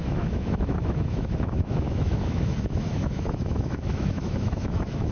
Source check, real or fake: fake